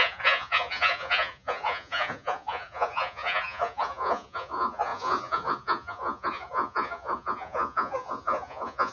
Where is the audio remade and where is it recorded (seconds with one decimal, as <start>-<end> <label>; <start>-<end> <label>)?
0.0-8.9 remade